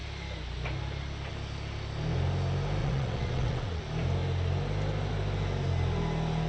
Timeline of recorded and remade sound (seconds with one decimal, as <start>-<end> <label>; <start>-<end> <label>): 0.0-2.8 recorded; 2.8-3.8 remade; 3.8-6.5 recorded